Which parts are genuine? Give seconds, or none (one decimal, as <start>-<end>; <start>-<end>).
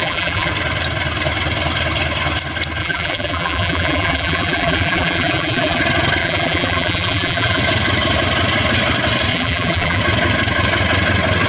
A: 0.5-2.8; 5.8-6.2; 7.6-9.3; 10.0-11.5